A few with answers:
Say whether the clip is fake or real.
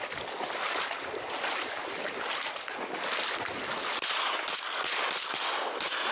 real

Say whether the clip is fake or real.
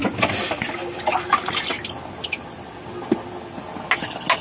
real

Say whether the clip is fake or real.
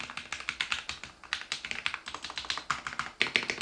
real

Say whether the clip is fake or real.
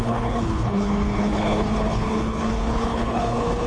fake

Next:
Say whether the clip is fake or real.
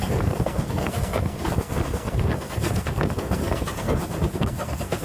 fake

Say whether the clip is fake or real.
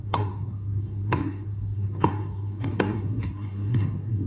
fake